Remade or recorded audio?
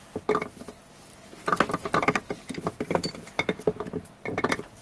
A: recorded